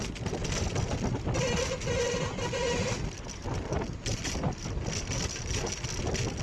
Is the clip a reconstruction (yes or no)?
no